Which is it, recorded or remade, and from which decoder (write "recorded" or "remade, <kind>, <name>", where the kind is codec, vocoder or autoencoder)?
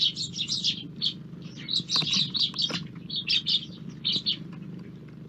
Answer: recorded